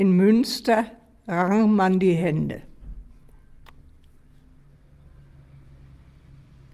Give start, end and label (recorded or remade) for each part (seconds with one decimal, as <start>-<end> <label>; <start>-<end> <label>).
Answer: 0.0-6.7 recorded